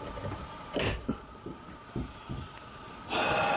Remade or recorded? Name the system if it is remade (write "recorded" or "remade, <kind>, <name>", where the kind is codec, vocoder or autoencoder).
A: recorded